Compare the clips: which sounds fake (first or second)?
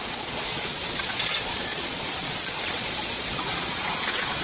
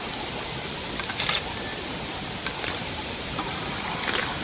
first